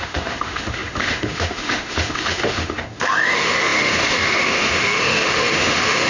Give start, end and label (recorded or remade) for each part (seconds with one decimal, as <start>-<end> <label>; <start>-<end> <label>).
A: 0.0-6.1 remade